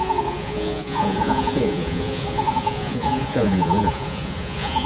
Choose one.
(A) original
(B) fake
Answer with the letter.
B